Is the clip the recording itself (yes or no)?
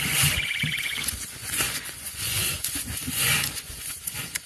no